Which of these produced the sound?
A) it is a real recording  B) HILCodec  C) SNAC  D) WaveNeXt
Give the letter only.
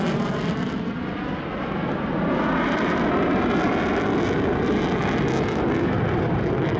A